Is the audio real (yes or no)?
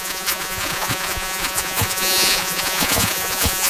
no